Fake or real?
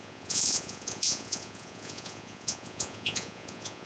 fake